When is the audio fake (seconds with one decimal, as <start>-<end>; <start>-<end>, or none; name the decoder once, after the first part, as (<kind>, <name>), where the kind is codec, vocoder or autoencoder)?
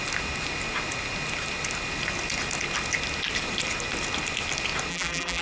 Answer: 4.9-5.4 (vocoder, BigVGAN v2)